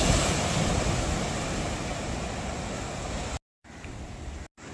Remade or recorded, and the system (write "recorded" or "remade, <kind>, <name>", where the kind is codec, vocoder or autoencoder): recorded